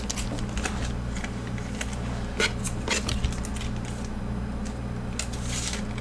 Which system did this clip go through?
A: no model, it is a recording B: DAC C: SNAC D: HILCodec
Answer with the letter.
A